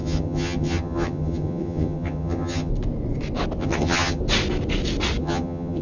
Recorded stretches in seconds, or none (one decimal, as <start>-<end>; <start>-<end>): 2.7-3.6; 4.2-5.2